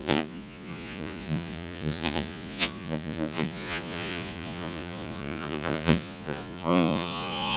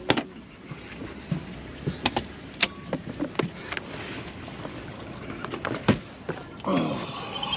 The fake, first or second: first